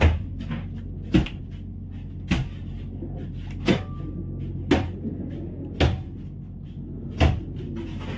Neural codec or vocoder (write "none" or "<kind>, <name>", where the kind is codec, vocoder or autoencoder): none